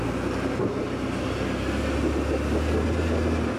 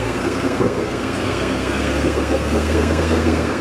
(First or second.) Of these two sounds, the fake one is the second